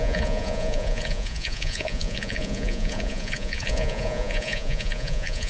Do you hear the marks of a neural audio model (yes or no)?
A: yes